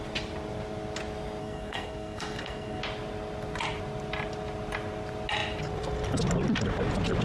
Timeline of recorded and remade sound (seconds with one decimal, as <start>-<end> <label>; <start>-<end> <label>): 0.0-1.4 recorded; 1.4-2.8 remade; 2.8-7.2 recorded